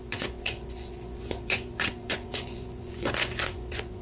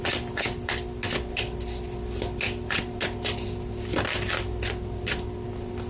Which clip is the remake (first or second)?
first